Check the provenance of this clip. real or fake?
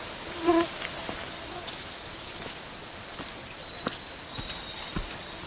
fake